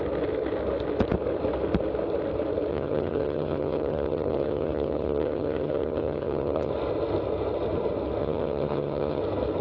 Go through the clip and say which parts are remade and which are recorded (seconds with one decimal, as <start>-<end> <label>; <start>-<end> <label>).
0.0-2.7 recorded; 2.7-6.7 remade; 6.7-8.2 recorded; 8.2-9.2 remade; 9.2-9.6 recorded